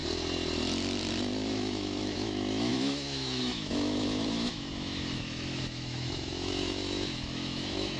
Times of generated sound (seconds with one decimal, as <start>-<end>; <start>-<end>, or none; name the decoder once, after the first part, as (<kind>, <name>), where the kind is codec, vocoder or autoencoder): 1.5-8.0 (autoencoder, DAC-VAE)